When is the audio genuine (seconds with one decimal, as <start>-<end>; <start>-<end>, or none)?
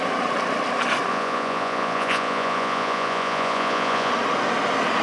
0.0-1.1; 4.1-5.0